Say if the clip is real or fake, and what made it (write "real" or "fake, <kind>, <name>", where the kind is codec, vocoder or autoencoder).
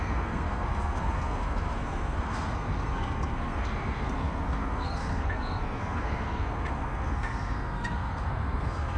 fake, codec, SNAC